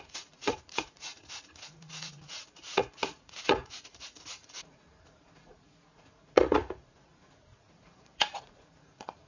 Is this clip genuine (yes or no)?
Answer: no